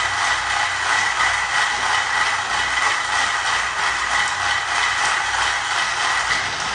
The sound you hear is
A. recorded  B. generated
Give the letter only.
A